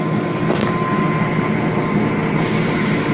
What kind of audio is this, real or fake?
real